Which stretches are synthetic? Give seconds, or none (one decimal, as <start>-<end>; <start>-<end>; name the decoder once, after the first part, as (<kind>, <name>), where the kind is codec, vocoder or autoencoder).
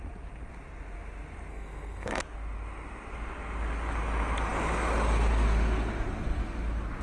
1.5-2.2 (codec, SNAC)